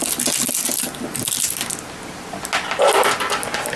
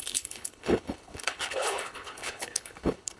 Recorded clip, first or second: first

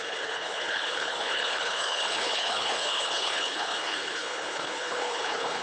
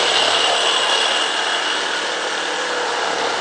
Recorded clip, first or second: second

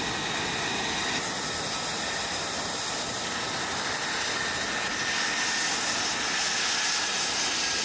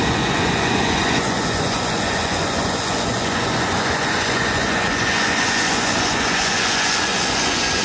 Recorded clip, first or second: first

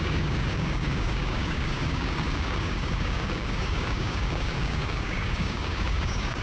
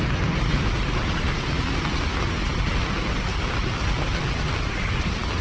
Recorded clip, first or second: second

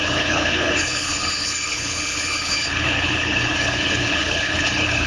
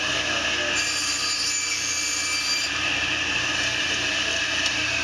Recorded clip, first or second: second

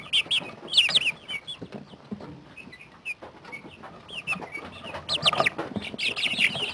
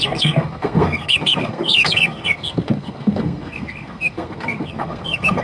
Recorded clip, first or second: first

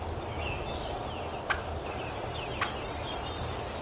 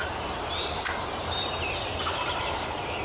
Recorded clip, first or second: first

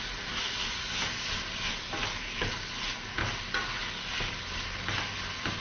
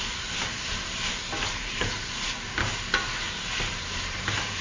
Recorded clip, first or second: first